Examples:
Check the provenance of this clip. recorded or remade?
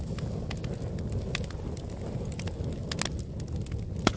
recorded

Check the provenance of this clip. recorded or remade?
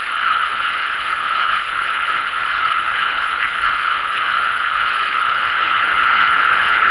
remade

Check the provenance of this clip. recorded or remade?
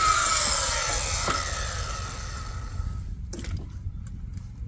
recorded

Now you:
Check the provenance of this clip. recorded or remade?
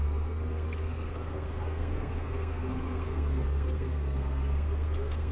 remade